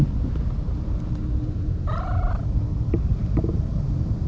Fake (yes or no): yes